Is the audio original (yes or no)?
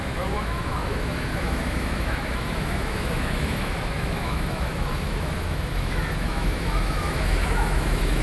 no